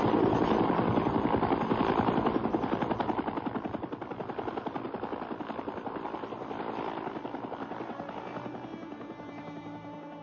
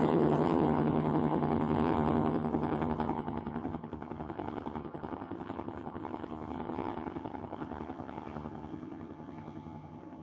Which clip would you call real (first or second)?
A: first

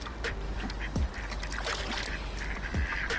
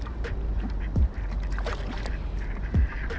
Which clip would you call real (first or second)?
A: first